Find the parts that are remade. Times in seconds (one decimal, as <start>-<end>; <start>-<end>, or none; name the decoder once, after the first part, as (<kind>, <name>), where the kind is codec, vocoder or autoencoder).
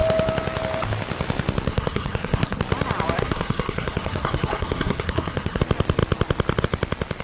1.7-2.6 (codec, SNAC); 3.2-5.6